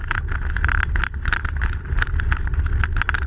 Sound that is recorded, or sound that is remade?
recorded